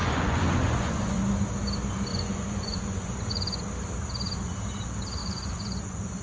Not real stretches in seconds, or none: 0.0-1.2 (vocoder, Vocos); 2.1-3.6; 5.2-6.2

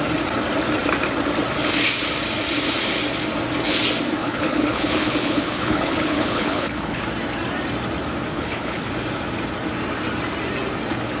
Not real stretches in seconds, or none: 4.2-7.0 (codec, HILCodec); 8.3-8.9

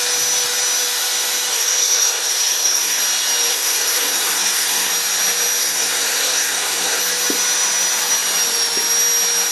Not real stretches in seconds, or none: 1.5-3.0 (codec, SNAC); 3.5-4.9; 5.6-7.0